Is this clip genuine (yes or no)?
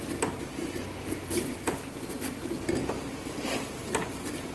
yes